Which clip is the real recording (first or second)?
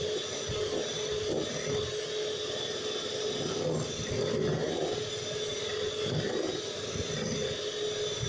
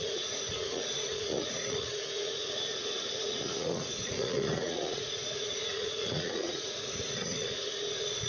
first